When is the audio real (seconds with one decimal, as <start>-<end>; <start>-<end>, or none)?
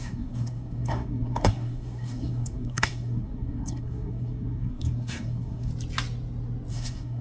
5.7-6.7